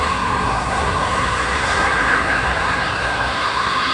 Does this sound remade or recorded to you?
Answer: remade